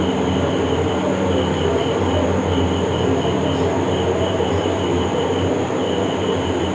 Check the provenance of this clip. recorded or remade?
recorded